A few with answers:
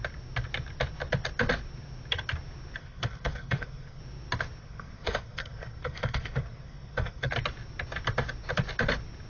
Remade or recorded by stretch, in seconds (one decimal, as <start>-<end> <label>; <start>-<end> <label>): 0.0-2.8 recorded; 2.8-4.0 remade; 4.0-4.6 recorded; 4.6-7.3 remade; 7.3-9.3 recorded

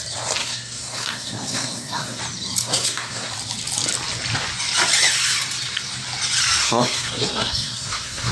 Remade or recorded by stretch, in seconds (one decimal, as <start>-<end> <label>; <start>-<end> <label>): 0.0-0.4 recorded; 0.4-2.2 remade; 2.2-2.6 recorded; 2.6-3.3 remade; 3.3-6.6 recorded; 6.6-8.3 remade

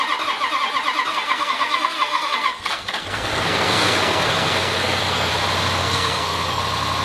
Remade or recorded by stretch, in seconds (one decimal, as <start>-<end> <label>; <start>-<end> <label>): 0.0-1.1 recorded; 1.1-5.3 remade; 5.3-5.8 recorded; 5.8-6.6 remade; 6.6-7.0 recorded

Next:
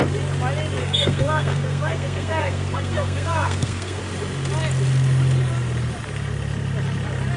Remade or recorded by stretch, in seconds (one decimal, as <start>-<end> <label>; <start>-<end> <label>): 0.0-0.8 recorded; 0.8-4.0 remade; 4.0-7.4 recorded

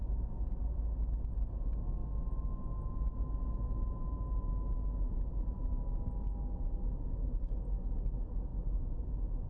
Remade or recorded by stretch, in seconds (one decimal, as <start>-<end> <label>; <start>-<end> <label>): 0.0-9.5 recorded